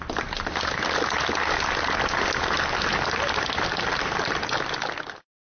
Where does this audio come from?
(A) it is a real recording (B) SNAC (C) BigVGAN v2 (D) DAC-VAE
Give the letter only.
A